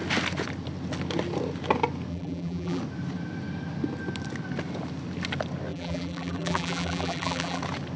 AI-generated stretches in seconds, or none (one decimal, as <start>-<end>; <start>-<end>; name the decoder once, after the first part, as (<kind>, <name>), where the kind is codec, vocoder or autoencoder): 2.1-2.8 (vocoder, BigVGAN v2); 5.7-7.6